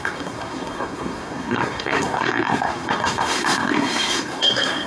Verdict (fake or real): fake